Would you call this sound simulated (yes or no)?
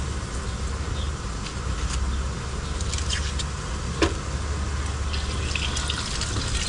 no